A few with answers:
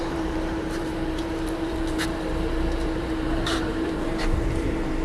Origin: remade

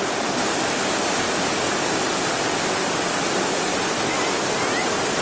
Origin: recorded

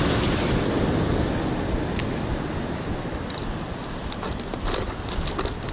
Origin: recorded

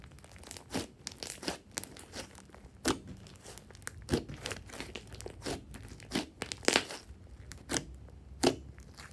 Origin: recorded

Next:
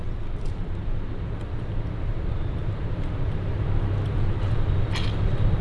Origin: remade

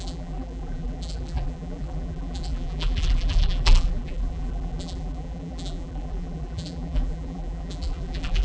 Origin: remade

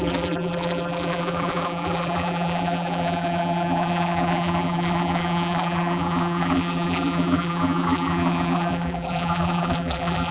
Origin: remade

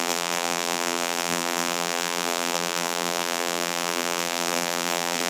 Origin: remade